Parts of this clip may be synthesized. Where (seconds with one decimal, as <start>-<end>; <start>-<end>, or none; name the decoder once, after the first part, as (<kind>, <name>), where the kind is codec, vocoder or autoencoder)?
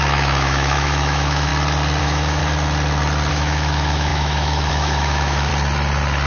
0.0-1.5 (autoencoder, DAC-VAE); 2.0-2.4; 3.3-5.5